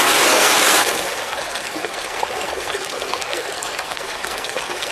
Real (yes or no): no